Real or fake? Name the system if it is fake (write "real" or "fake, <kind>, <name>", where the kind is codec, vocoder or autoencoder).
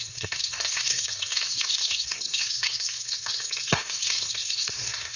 fake, codec, SNAC